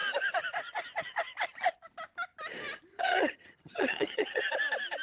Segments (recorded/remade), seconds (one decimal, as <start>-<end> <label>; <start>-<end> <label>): 0.0-2.9 recorded; 2.9-4.4 remade; 4.4-5.0 recorded